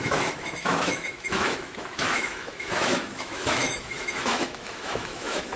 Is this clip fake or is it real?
fake